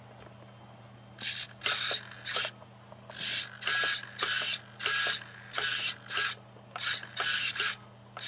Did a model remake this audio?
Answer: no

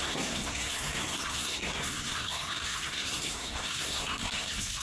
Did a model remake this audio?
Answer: yes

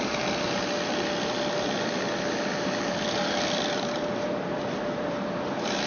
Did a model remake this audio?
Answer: yes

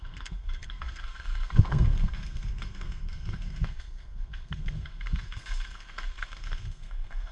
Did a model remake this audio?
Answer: yes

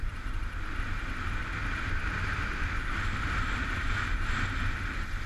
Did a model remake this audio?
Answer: no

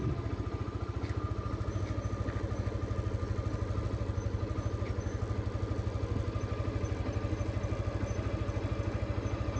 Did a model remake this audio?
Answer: no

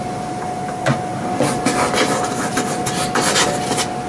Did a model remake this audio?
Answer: no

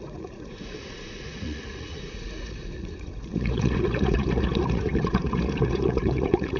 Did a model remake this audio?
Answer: yes